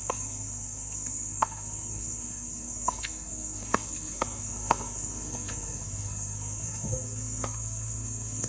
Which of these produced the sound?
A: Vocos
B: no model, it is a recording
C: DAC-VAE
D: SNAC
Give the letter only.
D